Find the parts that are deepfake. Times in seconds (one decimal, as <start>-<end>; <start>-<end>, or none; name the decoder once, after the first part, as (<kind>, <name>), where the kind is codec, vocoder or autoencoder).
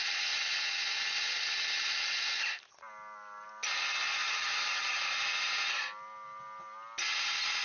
4.2-5.0 (vocoder, HiFi-GAN)